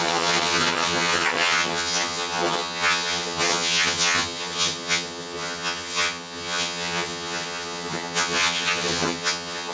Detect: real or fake fake